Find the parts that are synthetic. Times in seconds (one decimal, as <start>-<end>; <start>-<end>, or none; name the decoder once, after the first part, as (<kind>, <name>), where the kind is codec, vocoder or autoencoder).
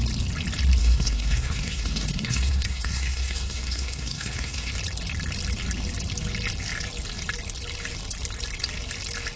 0.8-4.7 (codec, SNAC)